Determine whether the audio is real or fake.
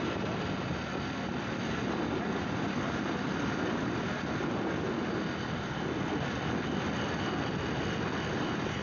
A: real